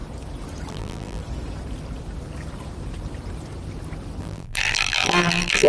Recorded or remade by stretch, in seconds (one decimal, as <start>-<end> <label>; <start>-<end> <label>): 0.0-0.7 recorded; 0.7-1.2 remade; 1.2-4.2 recorded; 4.2-5.7 remade